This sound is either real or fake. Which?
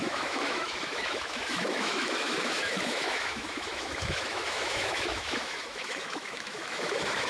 fake